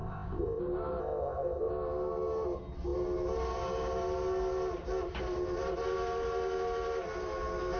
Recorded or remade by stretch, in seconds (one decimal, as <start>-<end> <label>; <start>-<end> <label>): 0.0-0.6 remade; 0.6-1.0 recorded; 1.0-1.7 remade; 1.7-7.8 recorded